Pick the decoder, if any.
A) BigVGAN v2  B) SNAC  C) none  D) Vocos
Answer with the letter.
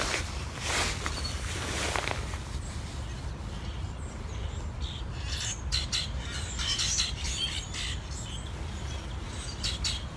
C